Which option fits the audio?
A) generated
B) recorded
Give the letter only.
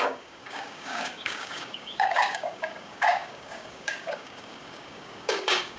A